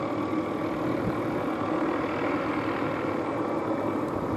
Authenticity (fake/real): real